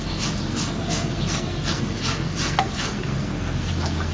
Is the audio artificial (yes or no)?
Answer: yes